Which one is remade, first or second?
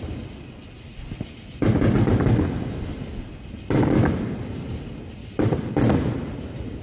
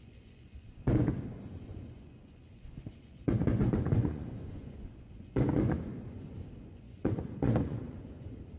second